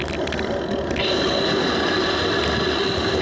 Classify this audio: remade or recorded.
recorded